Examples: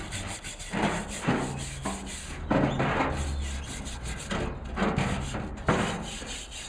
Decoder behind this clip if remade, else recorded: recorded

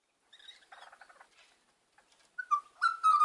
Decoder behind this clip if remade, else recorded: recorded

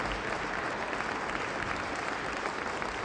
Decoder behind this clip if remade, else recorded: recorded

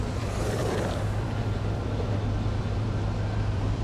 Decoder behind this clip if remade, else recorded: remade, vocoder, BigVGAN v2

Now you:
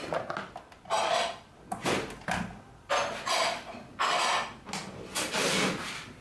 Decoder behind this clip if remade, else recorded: recorded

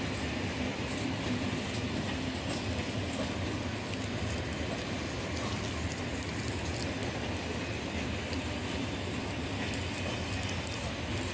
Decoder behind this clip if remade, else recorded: recorded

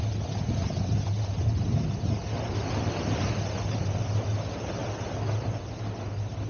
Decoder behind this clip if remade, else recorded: recorded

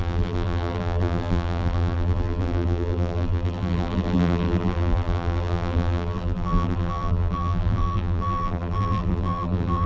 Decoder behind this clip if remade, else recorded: remade, vocoder, BigVGAN v2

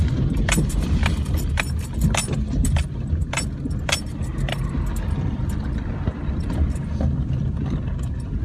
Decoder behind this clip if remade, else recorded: remade, vocoder, BigVGAN v2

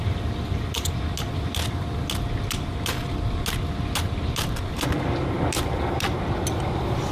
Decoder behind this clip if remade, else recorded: recorded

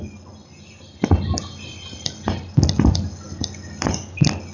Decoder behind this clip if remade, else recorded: recorded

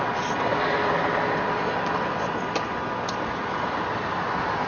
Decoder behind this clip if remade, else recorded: recorded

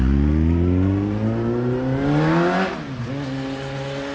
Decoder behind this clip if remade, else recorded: recorded